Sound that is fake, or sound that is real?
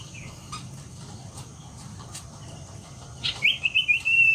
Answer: fake